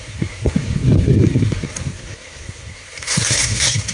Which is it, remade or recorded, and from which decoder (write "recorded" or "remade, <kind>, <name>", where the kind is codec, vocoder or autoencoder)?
remade, codec, SNAC